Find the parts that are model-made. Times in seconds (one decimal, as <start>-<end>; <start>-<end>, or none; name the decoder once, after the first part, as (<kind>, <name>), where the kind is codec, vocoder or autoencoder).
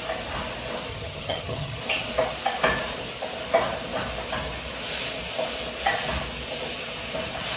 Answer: 0.9-1.8 (vocoder, HiFi-GAN)